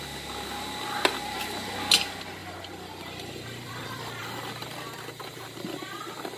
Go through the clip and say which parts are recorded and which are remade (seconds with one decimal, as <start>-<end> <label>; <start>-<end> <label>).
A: 0.0-2.4 recorded; 2.4-6.4 remade